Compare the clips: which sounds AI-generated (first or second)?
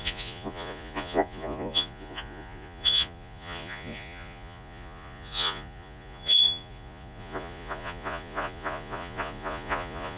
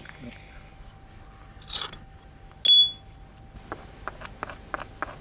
first